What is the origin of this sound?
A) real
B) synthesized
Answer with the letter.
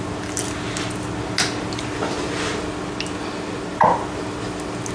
A